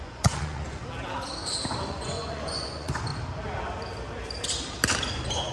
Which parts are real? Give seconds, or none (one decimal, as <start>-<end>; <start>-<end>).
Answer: 0.8-1.9; 3.1-5.1